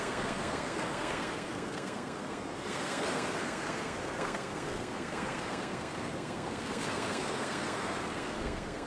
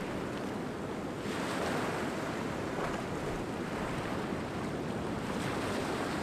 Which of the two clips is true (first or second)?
second